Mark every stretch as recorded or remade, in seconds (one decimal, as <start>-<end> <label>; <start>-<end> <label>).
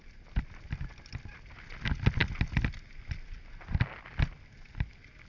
0.0-5.3 recorded